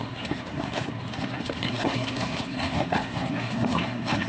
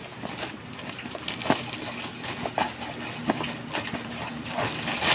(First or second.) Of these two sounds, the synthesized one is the first